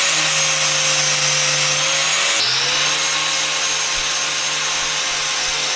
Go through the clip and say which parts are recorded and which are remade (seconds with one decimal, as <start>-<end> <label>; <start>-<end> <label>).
0.0-5.8 recorded